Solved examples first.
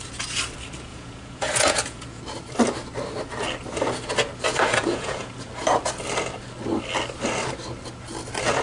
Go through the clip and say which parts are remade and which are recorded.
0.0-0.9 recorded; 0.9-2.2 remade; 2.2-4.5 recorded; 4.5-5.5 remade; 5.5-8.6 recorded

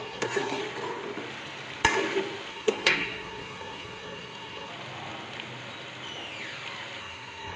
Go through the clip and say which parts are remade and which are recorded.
0.0-0.6 remade; 0.6-2.5 recorded; 2.5-4.7 remade; 4.7-7.0 recorded; 7.0-7.6 remade